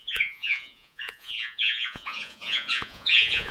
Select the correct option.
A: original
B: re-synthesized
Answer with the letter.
B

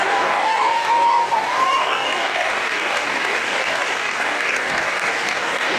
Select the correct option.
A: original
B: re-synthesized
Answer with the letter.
B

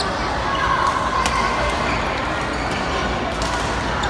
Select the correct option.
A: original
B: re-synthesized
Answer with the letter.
A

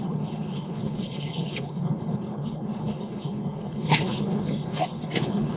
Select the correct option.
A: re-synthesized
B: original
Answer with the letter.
A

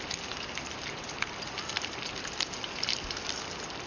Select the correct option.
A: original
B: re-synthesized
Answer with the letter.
A